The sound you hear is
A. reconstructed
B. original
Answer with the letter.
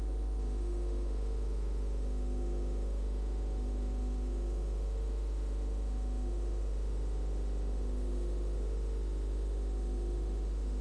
A